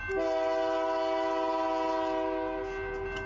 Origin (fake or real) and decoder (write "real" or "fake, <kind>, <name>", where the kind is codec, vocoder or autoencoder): real